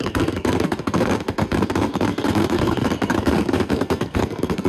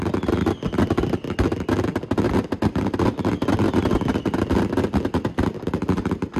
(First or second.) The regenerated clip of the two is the first